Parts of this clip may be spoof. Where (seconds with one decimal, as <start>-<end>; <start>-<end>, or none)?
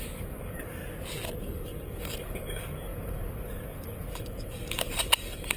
0.0-0.8; 1.4-5.6